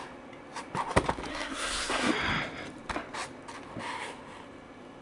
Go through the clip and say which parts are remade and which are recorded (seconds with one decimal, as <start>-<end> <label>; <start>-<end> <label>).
0.0-1.3 recorded; 1.3-2.1 remade; 2.1-5.0 recorded